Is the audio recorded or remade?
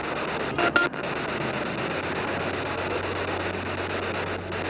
recorded